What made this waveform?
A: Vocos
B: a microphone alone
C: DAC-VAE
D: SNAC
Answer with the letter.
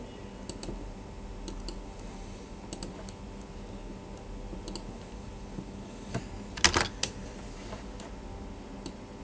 B